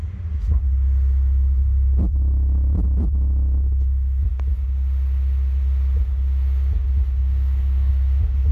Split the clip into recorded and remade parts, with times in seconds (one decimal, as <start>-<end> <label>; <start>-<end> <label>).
0.0-7.2 recorded; 7.2-7.9 remade; 7.9-8.5 recorded